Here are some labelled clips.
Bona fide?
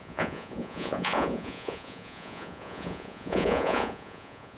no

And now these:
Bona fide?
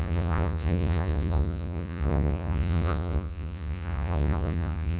no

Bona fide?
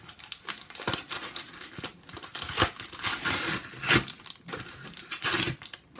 yes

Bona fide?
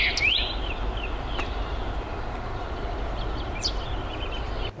yes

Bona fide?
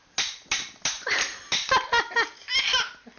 yes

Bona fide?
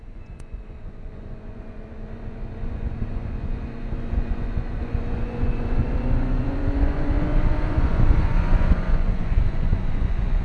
no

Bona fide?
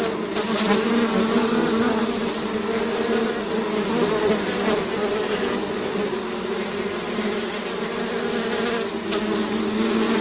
yes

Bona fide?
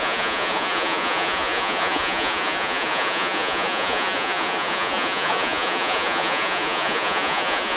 no